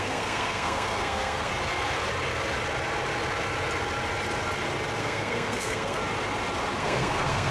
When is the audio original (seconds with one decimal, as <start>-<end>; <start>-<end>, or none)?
1.5-5.0; 6.0-6.8